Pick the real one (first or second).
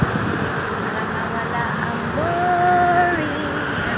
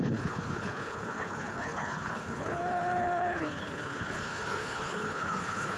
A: first